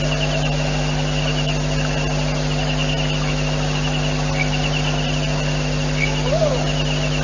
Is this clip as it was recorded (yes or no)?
yes